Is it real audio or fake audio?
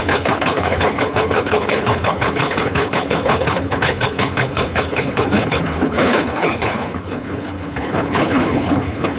fake